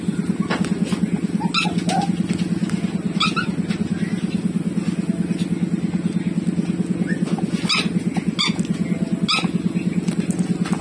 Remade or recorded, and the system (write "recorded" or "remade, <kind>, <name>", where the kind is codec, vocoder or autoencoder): recorded